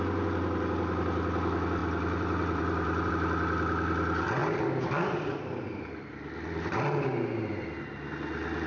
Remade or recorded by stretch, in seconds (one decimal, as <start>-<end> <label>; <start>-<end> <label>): 0.0-1.8 recorded; 1.8-3.1 remade; 3.1-4.4 recorded; 4.4-8.1 remade; 8.1-8.7 recorded